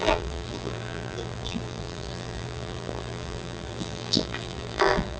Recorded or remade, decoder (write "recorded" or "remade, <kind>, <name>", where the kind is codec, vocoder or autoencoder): remade, vocoder, BigVGAN v2